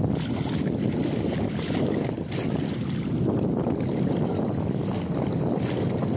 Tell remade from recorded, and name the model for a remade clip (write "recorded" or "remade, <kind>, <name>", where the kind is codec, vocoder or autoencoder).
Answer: recorded